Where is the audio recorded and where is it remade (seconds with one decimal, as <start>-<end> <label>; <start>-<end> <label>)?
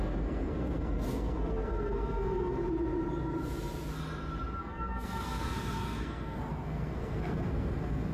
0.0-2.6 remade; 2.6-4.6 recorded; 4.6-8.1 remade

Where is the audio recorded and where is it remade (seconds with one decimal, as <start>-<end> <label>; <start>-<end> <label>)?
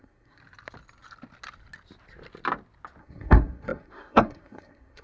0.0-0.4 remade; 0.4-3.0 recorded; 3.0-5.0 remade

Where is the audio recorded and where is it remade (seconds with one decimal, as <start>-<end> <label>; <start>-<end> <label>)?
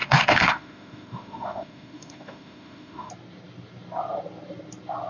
0.0-3.1 remade; 3.1-5.1 recorded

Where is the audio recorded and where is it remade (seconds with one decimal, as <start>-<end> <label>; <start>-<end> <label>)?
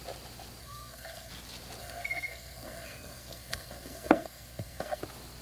0.0-0.6 recorded; 0.6-1.3 remade; 1.3-1.8 recorded; 1.8-5.0 remade; 5.0-5.4 recorded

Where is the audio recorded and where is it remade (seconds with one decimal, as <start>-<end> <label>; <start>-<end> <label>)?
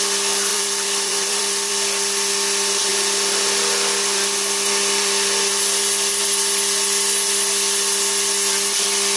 0.0-0.5 recorded; 0.5-1.7 remade; 1.7-9.2 recorded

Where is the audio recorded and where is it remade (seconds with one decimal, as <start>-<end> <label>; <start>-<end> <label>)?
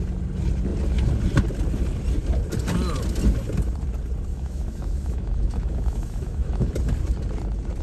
0.0-4.3 recorded; 4.3-6.7 remade; 6.7-7.8 recorded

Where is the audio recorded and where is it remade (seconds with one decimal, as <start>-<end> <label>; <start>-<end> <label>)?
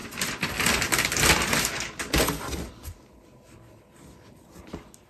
0.0-5.1 recorded